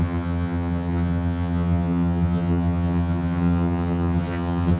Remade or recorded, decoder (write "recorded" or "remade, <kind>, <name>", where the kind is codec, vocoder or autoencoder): remade, vocoder, HiFi-GAN